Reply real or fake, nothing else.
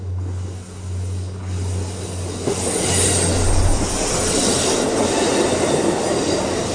real